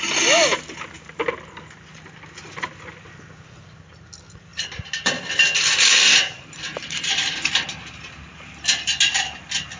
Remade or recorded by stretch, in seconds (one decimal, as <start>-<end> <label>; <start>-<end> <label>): 0.0-4.5 recorded; 4.5-5.2 remade; 5.2-9.8 recorded

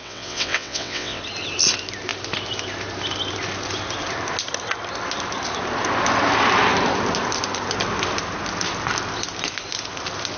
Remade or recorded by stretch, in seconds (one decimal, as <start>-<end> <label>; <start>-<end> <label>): 0.0-1.2 remade; 1.2-10.4 recorded